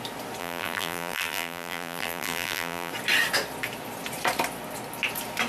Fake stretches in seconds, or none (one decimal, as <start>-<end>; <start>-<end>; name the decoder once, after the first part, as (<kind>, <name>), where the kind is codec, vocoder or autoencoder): 0.4-2.9 (vocoder, BigVGAN v2)